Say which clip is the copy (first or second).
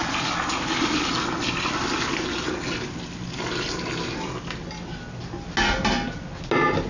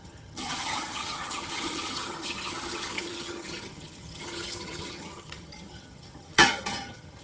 second